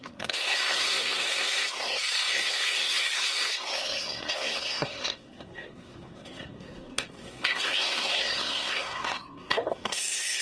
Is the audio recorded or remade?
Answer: remade